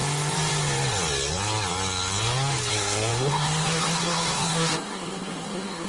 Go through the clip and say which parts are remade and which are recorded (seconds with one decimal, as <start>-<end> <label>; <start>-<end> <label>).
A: 0.0-2.7 recorded; 2.7-5.9 remade